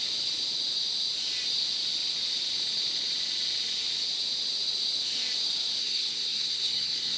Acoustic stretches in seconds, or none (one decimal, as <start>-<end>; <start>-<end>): 0.0-5.8